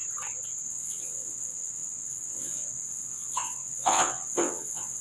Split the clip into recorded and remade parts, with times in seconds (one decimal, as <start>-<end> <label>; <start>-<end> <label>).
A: 0.0-0.7 recorded; 0.7-5.0 remade